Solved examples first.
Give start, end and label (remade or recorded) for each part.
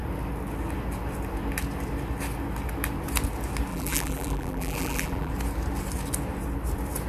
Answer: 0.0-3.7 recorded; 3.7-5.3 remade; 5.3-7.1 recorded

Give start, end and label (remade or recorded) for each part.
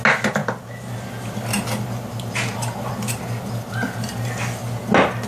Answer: 0.0-5.3 recorded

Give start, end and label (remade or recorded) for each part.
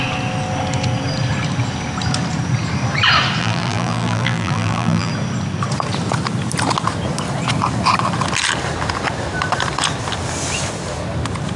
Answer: 0.0-3.4 recorded; 3.4-5.1 remade; 5.1-11.6 recorded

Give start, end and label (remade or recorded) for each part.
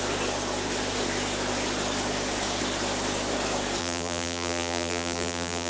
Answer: 0.0-3.8 recorded; 3.8-5.7 remade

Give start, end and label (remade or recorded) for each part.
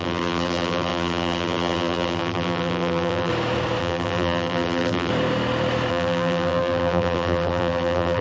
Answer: 0.0-3.3 remade; 3.3-3.8 recorded; 3.8-5.1 remade; 5.1-5.9 recorded; 5.9-8.2 remade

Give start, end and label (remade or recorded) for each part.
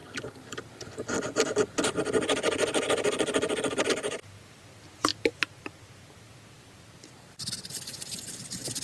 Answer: 0.0-8.8 recorded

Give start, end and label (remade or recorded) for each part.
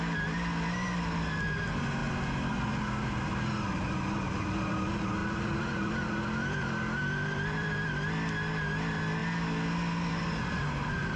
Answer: 0.0-2.0 recorded; 2.0-2.7 remade; 2.7-5.2 recorded; 5.2-7.9 remade; 7.9-11.2 recorded